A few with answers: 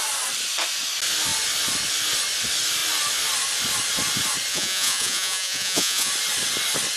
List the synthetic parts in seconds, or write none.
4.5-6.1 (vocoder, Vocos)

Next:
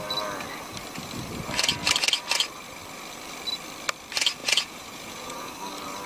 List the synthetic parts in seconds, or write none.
4.4-5.5 (vocoder, Vocos)

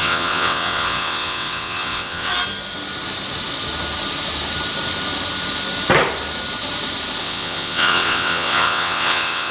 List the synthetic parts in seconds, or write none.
0.0-2.3 (vocoder, WaveNeXt); 7.2-9.5

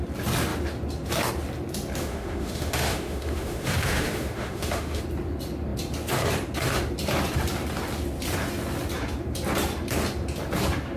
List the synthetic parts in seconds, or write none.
2.0-5.0 (autoencoder, DAC-VAE)

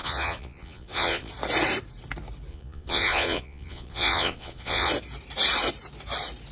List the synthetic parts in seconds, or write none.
0.0-1.3 (vocoder, Vocos); 2.5-4.9